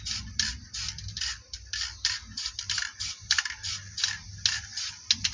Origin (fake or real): real